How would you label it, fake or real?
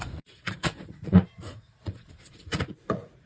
fake